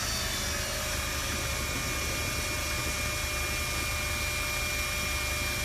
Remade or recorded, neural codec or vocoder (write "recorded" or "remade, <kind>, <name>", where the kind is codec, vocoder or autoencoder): recorded